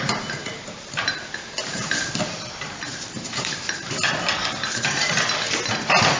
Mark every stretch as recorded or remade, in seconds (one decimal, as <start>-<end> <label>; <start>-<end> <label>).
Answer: 0.0-0.4 recorded; 0.4-2.0 remade; 2.0-2.9 recorded; 2.9-3.9 remade; 3.9-4.4 recorded; 4.4-5.1 remade; 5.1-6.2 recorded